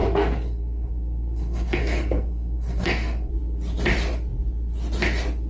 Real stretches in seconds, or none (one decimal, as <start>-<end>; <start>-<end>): 3.3-5.5